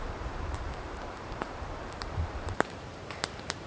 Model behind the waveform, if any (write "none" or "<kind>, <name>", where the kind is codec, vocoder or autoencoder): vocoder, BigVGAN v2